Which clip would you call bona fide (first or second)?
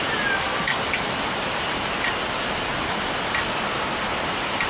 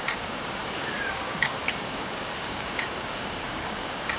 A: first